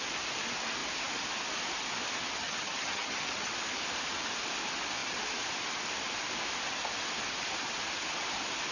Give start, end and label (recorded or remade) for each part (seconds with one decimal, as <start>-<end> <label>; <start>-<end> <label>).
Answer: 0.0-2.4 recorded; 2.4-3.5 remade; 3.5-8.7 recorded